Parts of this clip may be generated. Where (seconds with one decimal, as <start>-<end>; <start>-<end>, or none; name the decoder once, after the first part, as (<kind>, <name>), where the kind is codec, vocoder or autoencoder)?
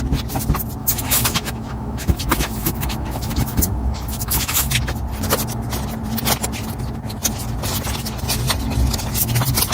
0.8-4.7 (autoencoder, DAC-VAE)